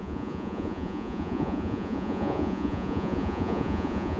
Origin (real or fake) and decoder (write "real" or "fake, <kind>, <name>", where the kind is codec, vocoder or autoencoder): fake, vocoder, Vocos